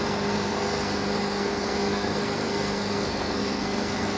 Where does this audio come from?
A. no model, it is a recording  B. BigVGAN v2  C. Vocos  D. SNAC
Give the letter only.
D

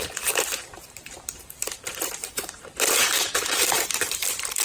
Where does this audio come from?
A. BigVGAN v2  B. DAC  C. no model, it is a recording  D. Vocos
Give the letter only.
A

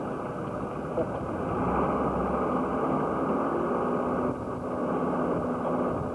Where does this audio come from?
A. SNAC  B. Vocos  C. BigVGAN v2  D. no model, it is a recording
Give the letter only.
D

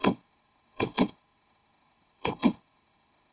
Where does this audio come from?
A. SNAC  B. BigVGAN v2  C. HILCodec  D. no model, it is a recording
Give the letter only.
C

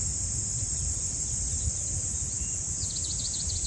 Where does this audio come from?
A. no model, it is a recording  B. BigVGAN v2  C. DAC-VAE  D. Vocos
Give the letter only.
A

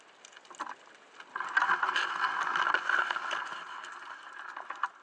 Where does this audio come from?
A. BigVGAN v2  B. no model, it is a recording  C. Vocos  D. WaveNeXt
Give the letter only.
B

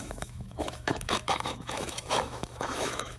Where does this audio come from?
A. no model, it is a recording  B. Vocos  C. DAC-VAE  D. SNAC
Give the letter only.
C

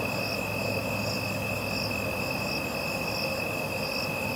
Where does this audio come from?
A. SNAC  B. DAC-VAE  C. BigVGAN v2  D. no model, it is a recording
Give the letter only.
D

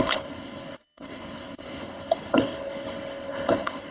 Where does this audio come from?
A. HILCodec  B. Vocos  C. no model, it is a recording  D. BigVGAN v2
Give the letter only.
A